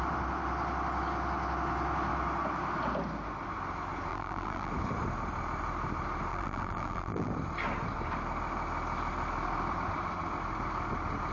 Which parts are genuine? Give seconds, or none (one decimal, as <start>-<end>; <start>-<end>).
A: 0.0-4.1; 4.7-6.3; 7.3-11.3